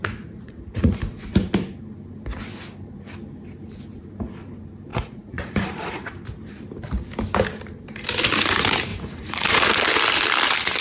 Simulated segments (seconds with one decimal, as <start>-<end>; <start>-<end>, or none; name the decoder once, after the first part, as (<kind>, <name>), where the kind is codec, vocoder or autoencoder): 0.0-1.0 (vocoder, Vocos); 4.9-6.1; 8.9-9.6